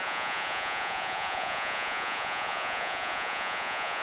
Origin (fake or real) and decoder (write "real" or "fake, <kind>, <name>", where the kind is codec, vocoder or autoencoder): fake, vocoder, Vocos